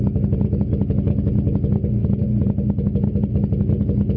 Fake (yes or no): no